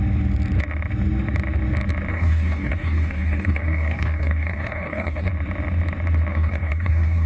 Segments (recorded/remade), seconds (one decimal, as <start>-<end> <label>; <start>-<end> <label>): 0.0-2.1 recorded; 2.1-5.3 remade; 5.3-6.3 recorded; 6.3-7.3 remade